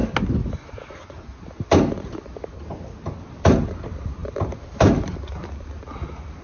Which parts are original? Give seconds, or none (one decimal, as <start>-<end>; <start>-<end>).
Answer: 0.0-0.5